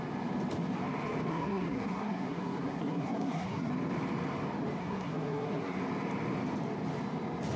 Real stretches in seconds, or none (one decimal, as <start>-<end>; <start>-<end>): 0.0-1.3; 3.7-4.8; 5.8-7.6